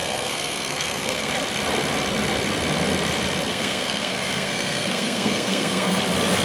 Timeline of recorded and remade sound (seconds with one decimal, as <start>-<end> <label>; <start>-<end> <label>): 0.0-1.3 remade; 1.3-3.5 recorded; 3.5-6.0 remade; 6.0-6.4 recorded